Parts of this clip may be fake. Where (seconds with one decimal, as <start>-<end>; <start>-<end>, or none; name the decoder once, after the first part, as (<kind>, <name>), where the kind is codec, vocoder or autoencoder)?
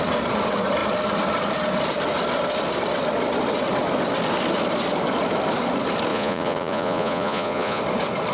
6.1-7.8 (vocoder, Vocos)